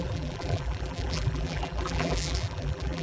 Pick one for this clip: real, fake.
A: fake